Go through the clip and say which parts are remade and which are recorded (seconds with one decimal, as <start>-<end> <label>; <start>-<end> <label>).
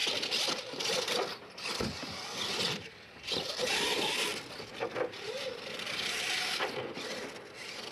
0.0-7.9 recorded